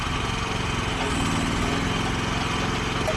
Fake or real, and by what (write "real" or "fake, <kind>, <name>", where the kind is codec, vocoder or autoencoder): real